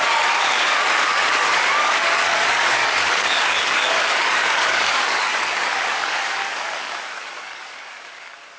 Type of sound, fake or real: fake